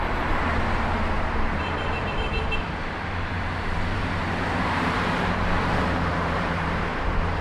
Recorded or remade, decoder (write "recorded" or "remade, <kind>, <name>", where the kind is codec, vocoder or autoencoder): remade, vocoder, BigVGAN v2